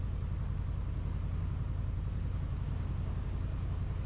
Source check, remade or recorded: recorded